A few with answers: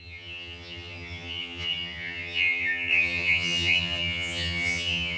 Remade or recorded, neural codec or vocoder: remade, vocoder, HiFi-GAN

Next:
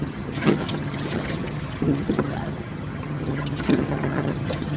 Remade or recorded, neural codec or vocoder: remade, vocoder, HiFi-GAN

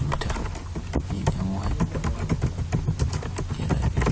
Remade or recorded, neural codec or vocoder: recorded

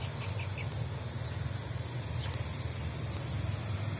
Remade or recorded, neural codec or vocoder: recorded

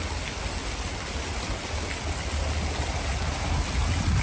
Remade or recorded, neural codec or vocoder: recorded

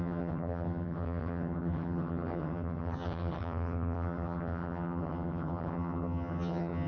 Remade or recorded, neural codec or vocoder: remade, vocoder, HiFi-GAN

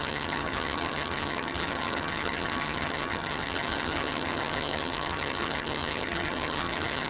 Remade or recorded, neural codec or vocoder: remade, vocoder, HiFi-GAN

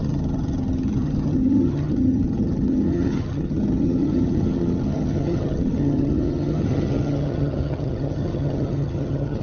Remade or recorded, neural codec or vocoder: remade, vocoder, HiFi-GAN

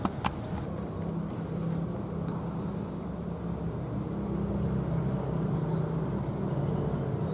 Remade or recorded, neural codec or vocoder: recorded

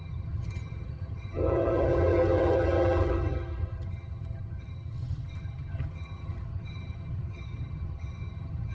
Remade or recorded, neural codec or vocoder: remade, vocoder, HiFi-GAN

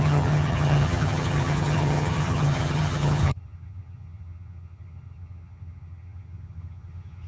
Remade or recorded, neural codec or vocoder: remade, vocoder, HiFi-GAN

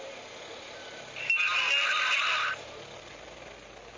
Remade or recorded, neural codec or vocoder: recorded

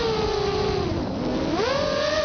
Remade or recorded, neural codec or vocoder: recorded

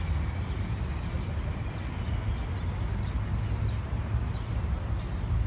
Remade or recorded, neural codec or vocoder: recorded